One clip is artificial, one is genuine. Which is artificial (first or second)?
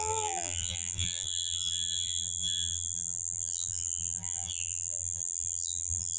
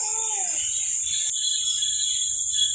first